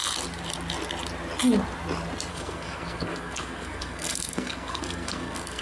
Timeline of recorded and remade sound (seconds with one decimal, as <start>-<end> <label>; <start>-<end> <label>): 0.0-2.3 recorded; 2.3-5.6 remade